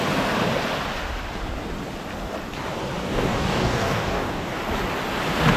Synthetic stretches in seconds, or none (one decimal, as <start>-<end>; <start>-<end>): 3.0-4.6